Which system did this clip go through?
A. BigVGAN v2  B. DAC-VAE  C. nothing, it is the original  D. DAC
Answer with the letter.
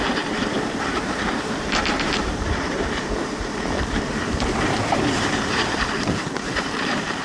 A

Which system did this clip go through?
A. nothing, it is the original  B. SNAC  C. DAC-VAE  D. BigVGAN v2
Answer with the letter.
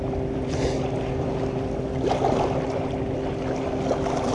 A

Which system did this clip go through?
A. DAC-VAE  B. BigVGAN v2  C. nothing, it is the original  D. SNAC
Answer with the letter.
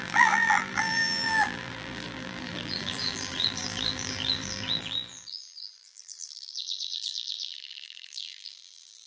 B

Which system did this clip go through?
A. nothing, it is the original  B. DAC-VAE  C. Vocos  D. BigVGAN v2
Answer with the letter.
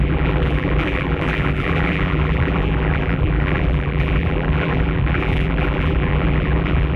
D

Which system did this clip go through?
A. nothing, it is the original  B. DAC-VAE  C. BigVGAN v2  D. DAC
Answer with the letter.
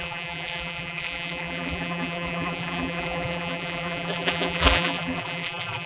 C